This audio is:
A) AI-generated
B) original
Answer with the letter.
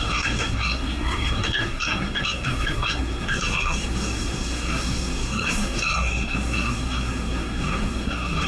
A